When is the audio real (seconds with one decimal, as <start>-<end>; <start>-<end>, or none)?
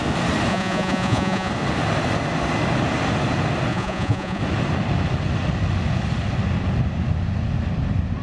0.0-0.5; 1.5-3.7; 4.4-8.2